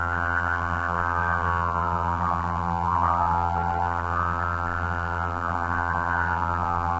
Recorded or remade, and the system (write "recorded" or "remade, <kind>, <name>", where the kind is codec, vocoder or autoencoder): remade, vocoder, BigVGAN v2